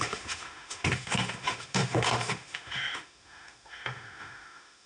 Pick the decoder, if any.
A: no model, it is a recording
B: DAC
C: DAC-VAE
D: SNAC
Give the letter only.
C